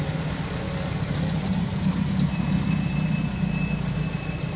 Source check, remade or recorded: recorded